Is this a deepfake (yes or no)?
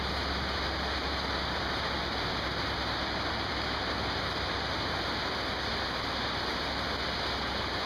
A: no